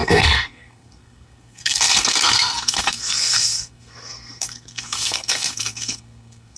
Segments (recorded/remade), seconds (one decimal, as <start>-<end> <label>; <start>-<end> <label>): 0.0-6.6 remade